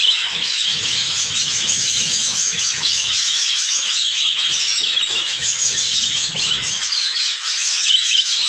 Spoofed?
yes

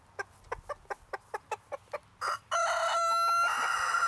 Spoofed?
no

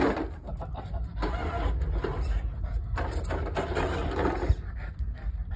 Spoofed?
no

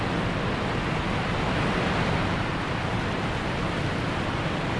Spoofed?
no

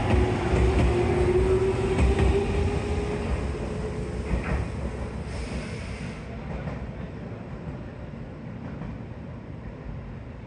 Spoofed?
no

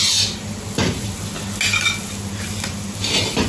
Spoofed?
no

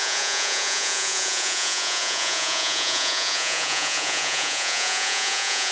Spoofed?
yes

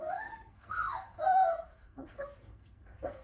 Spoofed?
yes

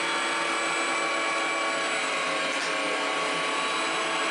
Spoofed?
no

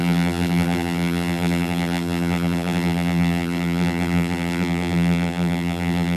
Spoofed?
yes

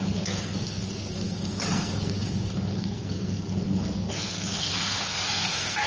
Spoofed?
yes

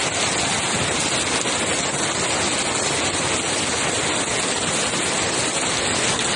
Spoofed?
no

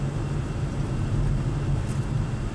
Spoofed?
no